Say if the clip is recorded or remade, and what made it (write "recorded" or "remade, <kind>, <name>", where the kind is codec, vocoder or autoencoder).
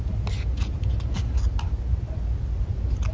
recorded